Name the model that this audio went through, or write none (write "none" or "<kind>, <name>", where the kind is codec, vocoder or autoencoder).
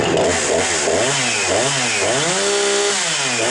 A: none